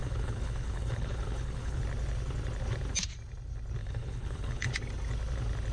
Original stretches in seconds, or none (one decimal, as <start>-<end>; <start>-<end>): 1.8-3.8; 4.7-5.7